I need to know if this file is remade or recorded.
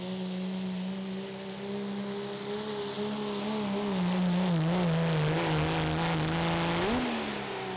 recorded